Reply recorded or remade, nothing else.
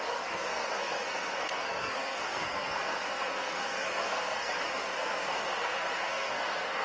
remade